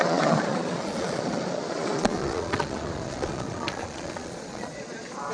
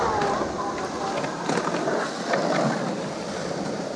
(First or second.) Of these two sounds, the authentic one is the second